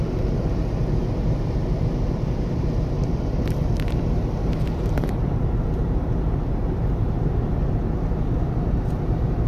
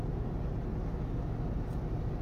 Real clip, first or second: second